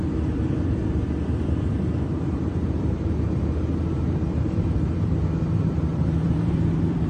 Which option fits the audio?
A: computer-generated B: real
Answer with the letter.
A